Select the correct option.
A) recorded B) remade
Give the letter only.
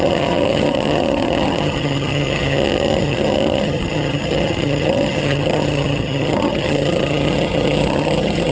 B